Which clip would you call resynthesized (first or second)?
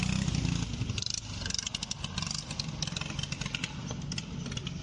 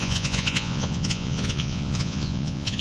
second